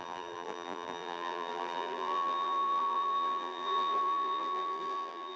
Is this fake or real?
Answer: fake